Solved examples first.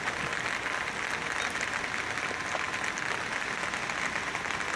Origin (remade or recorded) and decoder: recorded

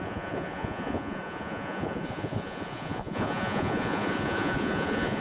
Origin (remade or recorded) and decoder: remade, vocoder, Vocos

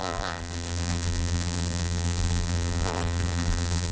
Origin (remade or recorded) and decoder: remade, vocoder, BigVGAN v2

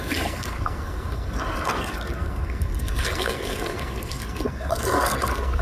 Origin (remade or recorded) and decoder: remade, codec, SNAC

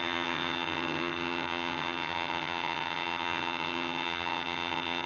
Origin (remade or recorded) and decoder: remade, vocoder, HiFi-GAN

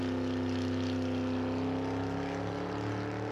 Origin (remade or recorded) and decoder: recorded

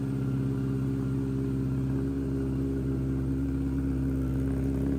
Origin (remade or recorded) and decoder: recorded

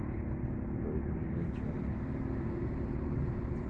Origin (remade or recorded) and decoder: recorded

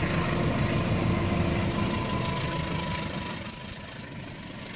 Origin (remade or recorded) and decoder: recorded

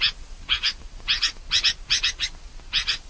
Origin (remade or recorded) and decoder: recorded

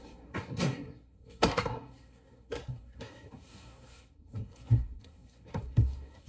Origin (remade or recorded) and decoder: remade, codec, SNAC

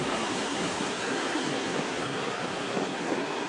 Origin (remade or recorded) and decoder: remade, codec, SNAC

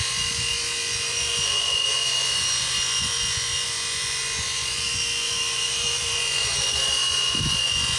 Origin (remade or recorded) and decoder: remade, vocoder, Vocos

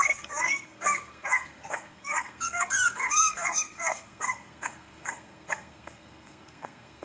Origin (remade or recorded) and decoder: remade, codec, SNAC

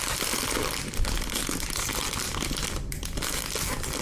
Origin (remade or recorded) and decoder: recorded